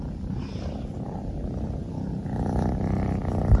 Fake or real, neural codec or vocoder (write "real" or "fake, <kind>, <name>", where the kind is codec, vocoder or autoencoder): real